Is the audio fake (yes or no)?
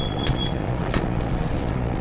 yes